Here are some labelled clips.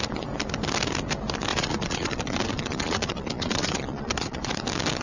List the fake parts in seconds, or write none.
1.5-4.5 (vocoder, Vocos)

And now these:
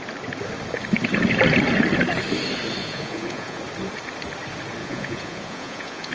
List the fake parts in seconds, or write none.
2.8-3.6 (vocoder, Vocos); 4.8-6.1

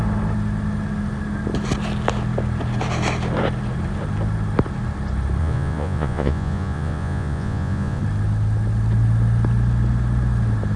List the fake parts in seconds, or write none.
5.4-8.0 (vocoder, Vocos)